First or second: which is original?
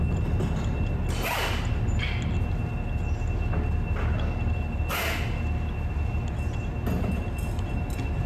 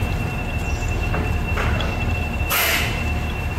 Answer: first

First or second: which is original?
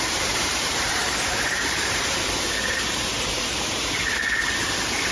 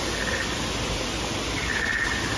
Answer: second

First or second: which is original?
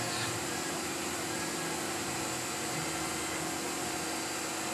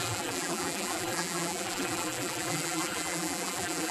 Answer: first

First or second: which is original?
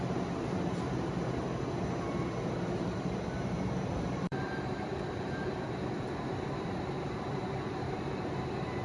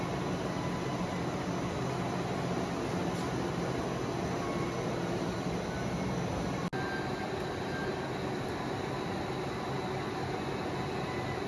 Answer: second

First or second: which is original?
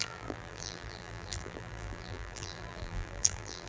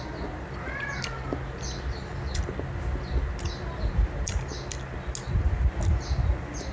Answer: second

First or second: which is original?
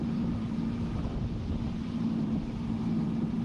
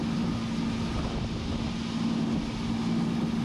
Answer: second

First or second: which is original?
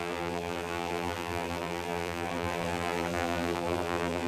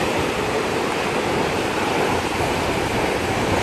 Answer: second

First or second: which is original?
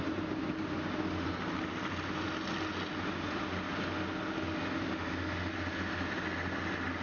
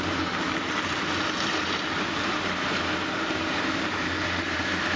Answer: first